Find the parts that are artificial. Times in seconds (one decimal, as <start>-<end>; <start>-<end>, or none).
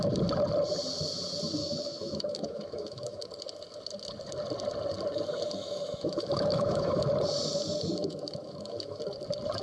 1.6-3.3; 5.6-7.0; 8.0-9.0